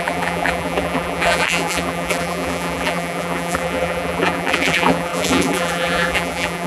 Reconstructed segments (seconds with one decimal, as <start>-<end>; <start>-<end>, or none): 0.0-6.7